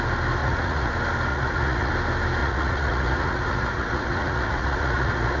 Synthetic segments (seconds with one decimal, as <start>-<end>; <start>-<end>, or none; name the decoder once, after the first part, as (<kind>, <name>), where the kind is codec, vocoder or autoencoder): 0.4-0.9 (vocoder, Vocos); 1.3-1.9; 2.4-5.4